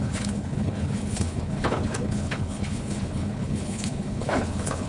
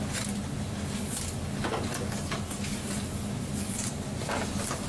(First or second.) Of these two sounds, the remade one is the first